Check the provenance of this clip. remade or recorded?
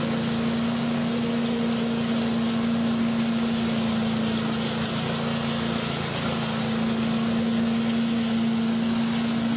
recorded